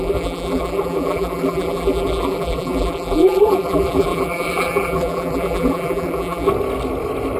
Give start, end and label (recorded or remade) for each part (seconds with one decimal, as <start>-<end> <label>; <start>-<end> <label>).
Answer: 0.0-6.5 remade; 6.5-7.4 recorded